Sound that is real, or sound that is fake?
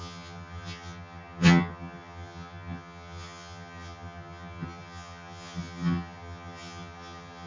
fake